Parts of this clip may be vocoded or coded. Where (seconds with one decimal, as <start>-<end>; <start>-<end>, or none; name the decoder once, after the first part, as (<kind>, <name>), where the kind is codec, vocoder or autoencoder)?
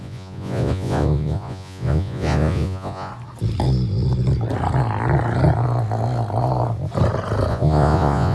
0.0-3.1 (vocoder, Vocos); 7.5-8.3